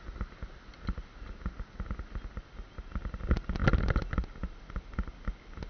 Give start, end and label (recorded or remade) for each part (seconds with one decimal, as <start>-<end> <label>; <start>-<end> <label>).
0.0-5.7 recorded